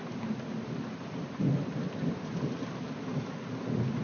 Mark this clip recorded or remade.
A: recorded